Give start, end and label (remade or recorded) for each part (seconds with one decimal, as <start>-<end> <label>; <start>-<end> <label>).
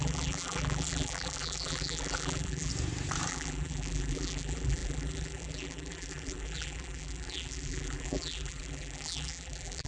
0.0-2.7 remade; 2.7-3.3 recorded; 3.3-9.9 remade